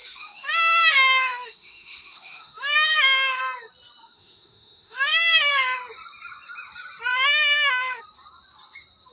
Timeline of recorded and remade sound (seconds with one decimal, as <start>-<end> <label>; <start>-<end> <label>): 0.0-3.4 remade; 3.4-4.0 recorded; 4.0-5.5 remade; 5.5-7.1 recorded; 7.1-8.0 remade; 8.0-9.1 recorded

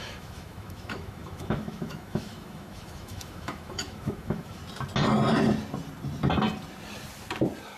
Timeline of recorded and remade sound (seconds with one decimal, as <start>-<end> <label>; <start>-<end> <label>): 0.0-4.6 remade; 4.6-7.8 recorded

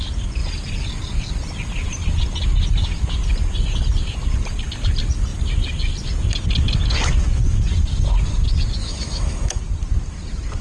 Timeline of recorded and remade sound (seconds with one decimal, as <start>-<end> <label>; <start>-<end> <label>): 0.0-8.8 recorded; 8.8-9.6 remade; 9.6-10.6 recorded